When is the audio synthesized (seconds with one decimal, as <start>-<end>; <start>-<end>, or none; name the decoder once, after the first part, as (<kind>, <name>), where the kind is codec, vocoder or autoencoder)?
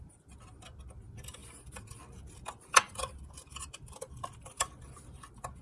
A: 1.4-4.8 (vocoder, BigVGAN v2)